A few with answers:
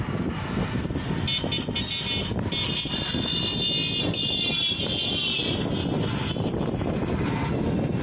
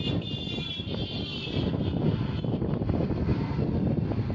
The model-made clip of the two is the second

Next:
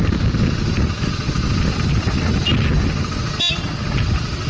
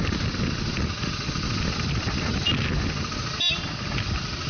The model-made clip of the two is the second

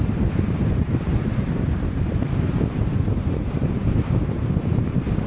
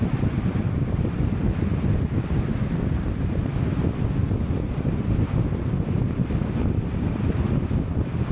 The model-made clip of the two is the first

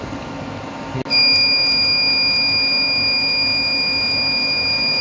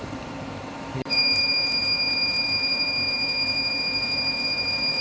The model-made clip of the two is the second